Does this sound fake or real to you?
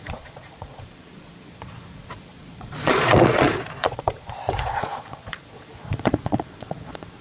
fake